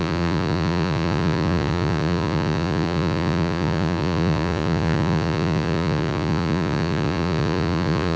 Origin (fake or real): fake